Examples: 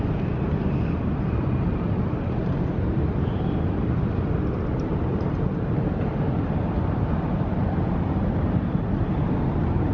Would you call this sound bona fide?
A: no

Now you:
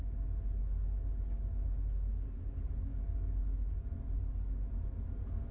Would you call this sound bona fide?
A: yes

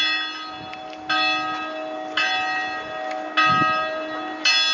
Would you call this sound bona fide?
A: yes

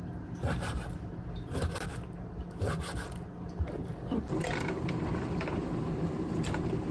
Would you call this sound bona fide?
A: yes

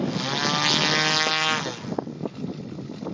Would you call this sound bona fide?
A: yes